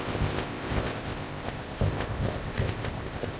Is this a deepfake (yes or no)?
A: yes